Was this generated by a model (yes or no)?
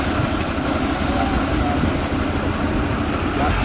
no